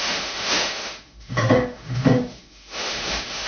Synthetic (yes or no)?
yes